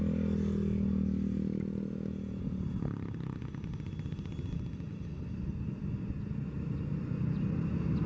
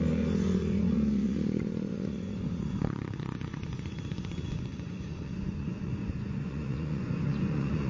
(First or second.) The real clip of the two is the first